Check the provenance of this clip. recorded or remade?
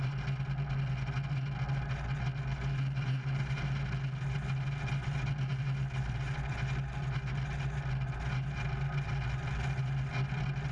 recorded